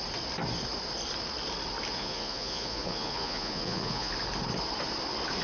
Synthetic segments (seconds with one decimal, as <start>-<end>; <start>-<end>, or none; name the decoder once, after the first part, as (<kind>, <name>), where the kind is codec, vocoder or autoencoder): 1.9-4.1 (vocoder, Vocos)